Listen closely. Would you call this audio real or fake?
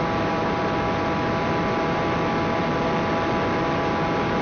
real